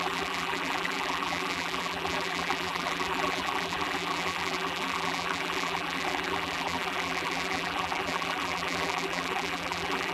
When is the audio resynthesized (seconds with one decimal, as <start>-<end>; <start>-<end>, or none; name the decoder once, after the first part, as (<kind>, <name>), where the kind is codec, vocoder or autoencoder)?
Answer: 0.0-10.1 (vocoder, BigVGAN v2)